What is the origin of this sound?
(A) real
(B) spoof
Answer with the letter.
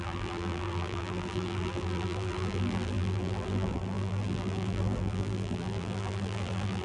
B